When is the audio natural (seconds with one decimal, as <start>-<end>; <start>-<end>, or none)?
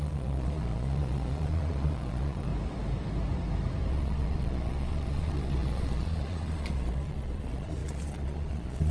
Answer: 2.5-3.9